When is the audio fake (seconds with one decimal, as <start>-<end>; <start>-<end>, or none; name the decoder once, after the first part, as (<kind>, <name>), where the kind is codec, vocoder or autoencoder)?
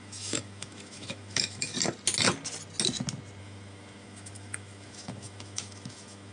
0.0-1.7 (autoencoder, DAC-VAE); 3.4-6.3